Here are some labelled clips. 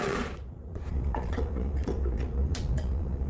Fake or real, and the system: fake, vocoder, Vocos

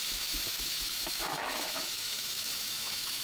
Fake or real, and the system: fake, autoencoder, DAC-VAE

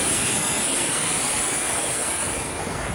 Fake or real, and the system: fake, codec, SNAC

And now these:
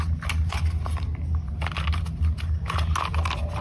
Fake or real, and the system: real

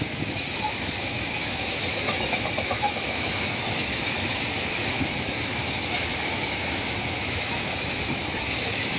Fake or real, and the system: fake, autoencoder, DAC-VAE